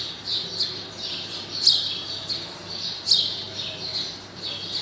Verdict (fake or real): real